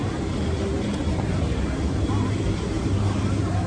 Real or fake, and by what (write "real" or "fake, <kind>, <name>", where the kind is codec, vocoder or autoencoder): fake, vocoder, BigVGAN v2